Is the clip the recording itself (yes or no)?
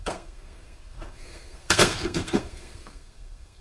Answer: no